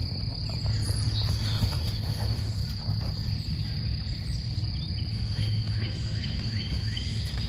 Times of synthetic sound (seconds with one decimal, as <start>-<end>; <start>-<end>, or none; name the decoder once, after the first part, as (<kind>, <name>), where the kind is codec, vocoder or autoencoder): 1.3-2.6 (autoencoder, DAC-VAE); 5.1-7.5